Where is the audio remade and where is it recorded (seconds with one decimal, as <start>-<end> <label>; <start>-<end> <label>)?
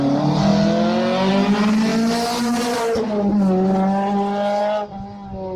0.0-5.6 recorded